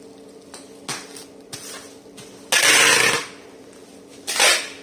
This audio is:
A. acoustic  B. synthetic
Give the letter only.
A